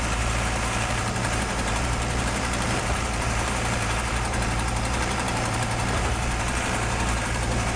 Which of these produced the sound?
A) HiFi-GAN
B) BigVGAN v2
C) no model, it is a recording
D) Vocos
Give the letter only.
B